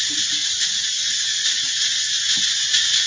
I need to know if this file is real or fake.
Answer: real